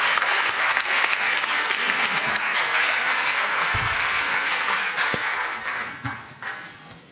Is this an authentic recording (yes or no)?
no